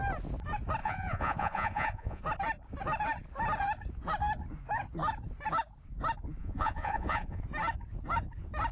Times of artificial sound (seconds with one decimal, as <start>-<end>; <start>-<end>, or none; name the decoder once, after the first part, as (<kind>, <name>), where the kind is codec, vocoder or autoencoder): 0.8-2.2 (vocoder, Vocos); 6.4-7.4